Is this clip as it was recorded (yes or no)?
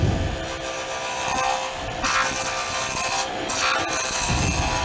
yes